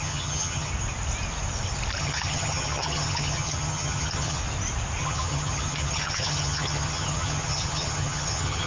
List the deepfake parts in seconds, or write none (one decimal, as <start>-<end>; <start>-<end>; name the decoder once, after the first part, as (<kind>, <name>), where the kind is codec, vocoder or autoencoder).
0.0-0.7 (vocoder, HiFi-GAN); 2.0-4.4; 5.0-8.7